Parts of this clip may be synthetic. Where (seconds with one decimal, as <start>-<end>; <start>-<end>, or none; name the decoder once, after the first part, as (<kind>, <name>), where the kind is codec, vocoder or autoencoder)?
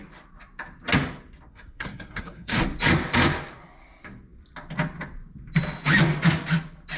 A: 1.5-2.6 (codec, SNAC)